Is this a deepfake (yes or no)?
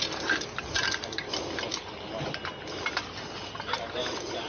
no